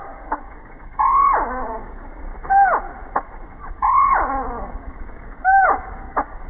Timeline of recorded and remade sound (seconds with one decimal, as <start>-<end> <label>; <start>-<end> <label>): 0.0-2.3 remade; 2.3-3.6 recorded; 3.6-6.5 remade